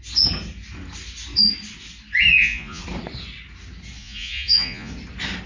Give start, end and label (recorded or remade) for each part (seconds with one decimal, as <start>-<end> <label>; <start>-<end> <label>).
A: 0.0-2.3 recorded; 2.3-2.8 remade; 2.8-4.0 recorded; 4.0-4.9 remade; 4.9-5.5 recorded